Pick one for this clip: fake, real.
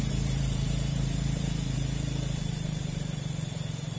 fake